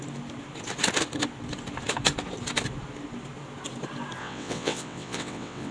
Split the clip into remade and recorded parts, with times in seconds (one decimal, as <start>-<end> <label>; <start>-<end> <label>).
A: 0.0-4.2 recorded; 4.2-5.7 remade